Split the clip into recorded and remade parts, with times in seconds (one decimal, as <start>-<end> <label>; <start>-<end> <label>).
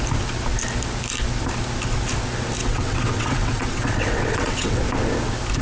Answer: 0.0-2.6 recorded; 2.6-4.8 remade; 4.8-5.6 recorded